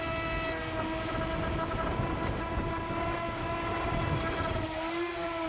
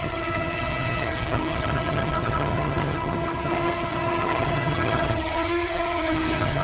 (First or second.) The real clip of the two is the first